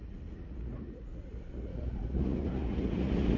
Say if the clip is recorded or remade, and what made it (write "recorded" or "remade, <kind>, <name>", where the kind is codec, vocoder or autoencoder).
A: remade, vocoder, Vocos